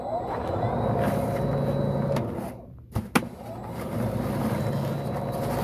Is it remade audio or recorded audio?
recorded